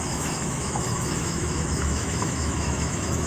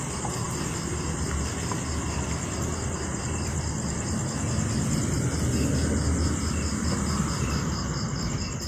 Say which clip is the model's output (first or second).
first